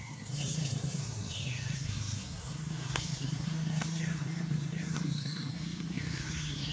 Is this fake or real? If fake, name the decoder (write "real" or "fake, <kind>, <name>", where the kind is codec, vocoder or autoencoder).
fake, codec, SNAC